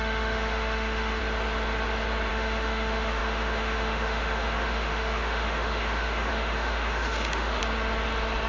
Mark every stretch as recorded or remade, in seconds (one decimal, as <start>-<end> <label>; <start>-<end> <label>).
0.0-1.2 remade; 1.2-2.3 recorded; 2.3-7.6 remade; 7.6-8.5 recorded